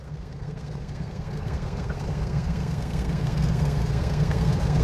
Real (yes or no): no